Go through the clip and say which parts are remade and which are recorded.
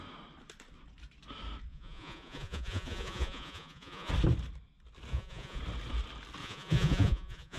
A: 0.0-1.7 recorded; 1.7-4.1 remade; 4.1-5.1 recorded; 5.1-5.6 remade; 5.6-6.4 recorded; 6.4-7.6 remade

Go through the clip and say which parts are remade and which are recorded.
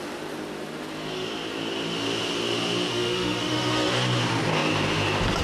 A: 0.0-2.9 recorded; 2.9-3.9 remade; 3.9-5.4 recorded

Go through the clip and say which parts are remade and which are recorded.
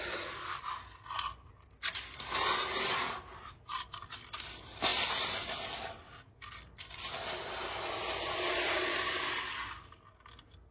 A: 0.0-10.7 recorded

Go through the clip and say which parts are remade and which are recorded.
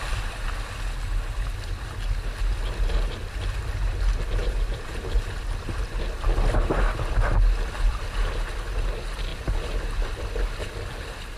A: 0.0-4.4 recorded; 4.4-5.8 remade; 5.8-7.9 recorded; 7.9-8.5 remade; 8.5-9.3 recorded; 9.3-10.1 remade; 10.1-11.4 recorded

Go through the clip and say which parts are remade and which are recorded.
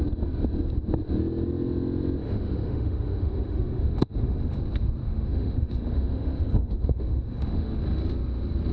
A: 0.0-2.2 recorded; 2.2-4.6 remade; 4.6-5.0 recorded; 5.0-7.8 remade; 7.8-8.7 recorded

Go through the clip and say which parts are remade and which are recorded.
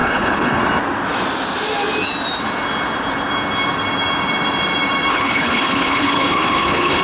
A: 0.0-0.6 remade; 0.6-5.1 recorded; 5.1-7.0 remade